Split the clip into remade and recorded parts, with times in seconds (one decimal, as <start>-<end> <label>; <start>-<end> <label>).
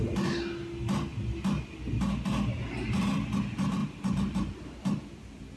0.0-3.8 recorded; 3.8-4.8 remade; 4.8-5.6 recorded